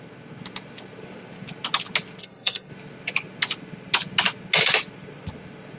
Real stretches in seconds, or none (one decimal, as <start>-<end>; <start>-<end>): 0.0-2.2; 2.7-5.8